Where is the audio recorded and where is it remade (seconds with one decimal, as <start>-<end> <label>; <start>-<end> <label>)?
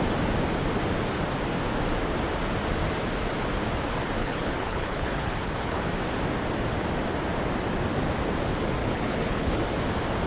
0.0-4.2 recorded; 4.2-5.9 remade; 5.9-8.8 recorded; 8.8-9.6 remade; 9.6-10.3 recorded